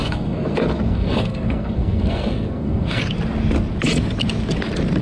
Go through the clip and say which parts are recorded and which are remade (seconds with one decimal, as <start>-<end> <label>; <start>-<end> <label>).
0.0-3.0 remade; 3.0-5.0 recorded